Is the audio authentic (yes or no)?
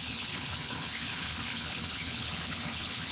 no